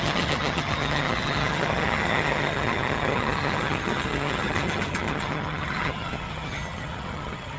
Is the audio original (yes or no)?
no